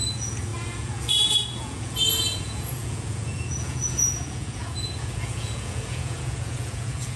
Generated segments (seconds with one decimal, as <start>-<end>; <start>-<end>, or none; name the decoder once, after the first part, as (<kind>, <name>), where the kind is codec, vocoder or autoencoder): 0.0-7.2 (vocoder, Vocos)